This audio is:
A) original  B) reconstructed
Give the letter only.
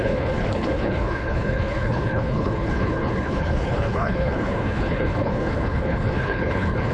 B